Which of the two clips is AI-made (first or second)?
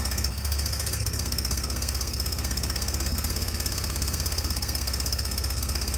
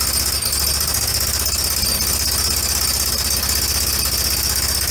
first